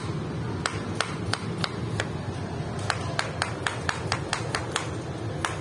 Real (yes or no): yes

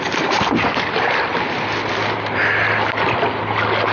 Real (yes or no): yes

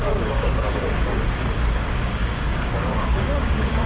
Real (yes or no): no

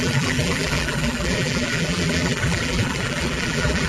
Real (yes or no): no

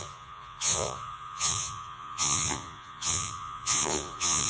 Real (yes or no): no